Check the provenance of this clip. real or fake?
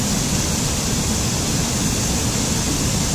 real